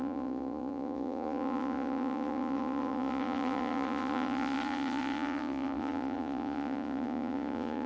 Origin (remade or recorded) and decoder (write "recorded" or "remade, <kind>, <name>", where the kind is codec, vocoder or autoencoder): remade, vocoder, Vocos